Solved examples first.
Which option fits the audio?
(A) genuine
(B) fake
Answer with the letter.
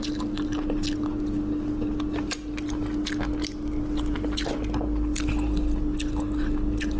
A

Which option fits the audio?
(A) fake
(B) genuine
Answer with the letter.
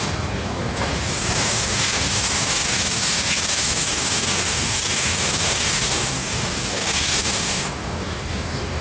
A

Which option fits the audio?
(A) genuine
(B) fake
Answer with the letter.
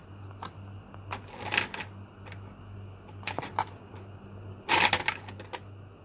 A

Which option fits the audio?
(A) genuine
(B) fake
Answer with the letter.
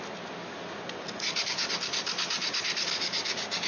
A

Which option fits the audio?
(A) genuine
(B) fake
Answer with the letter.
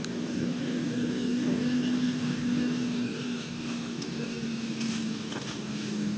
B